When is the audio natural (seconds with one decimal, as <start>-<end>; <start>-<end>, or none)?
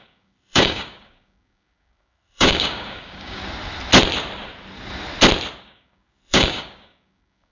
3.4-5.6